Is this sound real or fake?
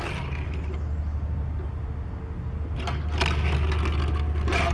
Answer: real